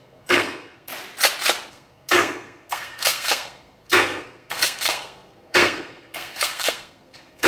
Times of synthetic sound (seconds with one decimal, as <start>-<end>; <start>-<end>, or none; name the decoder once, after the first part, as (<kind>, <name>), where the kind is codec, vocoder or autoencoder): 0.0-0.9 (codec, SNAC); 1.7-7.5